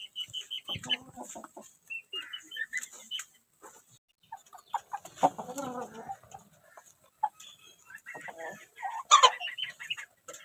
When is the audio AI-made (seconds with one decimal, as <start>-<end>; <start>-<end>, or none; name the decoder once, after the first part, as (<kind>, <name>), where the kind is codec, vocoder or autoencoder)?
none